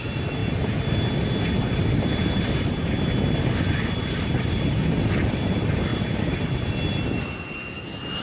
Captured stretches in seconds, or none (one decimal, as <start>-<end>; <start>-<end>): 0.0-8.2